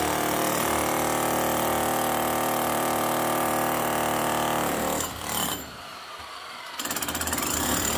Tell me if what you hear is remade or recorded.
remade